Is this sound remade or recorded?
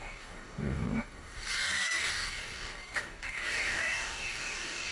remade